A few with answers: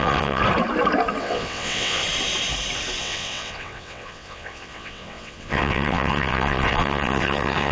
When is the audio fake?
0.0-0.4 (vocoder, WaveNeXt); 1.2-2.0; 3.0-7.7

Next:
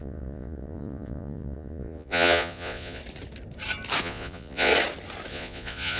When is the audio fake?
0.0-3.0 (vocoder, Vocos); 4.0-4.7; 5.3-6.0

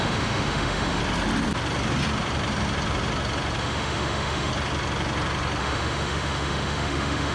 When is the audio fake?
0.0-1.0 (autoencoder, DAC-VAE); 3.6-4.5; 5.6-7.3

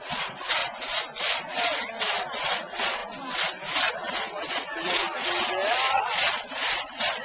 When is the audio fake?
0.0-0.6 (vocoder, Vocos); 1.2-1.7; 2.4-3.0; 3.9-5.4; 5.9-7.2

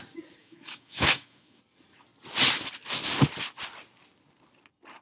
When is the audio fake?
0.4-1.6 (autoencoder, DAC-VAE)

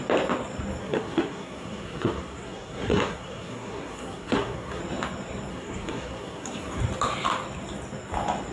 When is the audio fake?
0.8-4.8 (codec, SNAC); 5.5-6.8

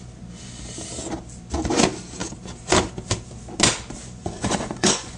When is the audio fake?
4.2-5.2 (vocoder, Vocos)